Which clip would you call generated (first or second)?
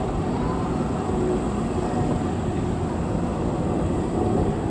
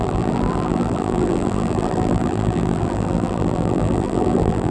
second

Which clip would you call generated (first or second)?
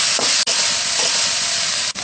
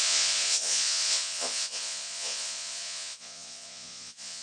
second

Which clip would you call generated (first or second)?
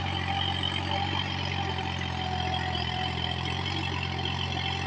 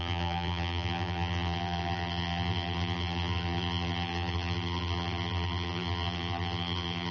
second